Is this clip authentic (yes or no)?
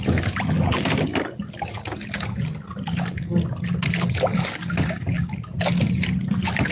yes